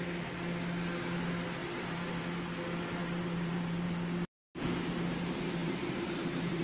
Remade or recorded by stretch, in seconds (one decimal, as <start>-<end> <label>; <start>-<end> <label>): 0.0-1.6 recorded; 1.6-2.2 remade; 2.2-3.0 recorded; 3.0-4.4 remade; 4.4-5.6 recorded; 5.6-6.6 remade